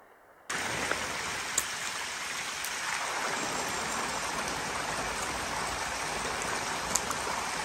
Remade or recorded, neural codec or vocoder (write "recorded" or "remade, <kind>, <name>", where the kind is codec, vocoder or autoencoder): recorded